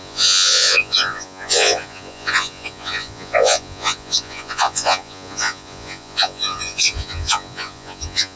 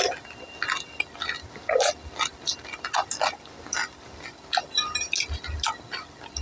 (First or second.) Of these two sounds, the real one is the second